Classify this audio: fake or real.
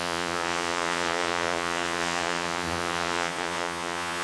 fake